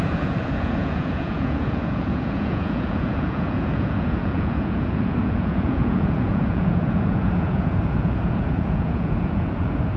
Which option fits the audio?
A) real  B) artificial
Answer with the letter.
B